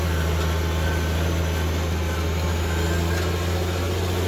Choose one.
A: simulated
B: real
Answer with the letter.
B